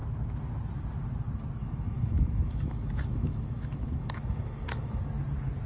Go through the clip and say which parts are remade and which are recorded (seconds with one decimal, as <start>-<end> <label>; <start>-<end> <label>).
0.0-1.6 recorded; 1.6-5.0 remade; 5.0-5.7 recorded